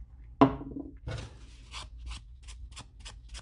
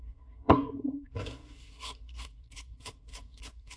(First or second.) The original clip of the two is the first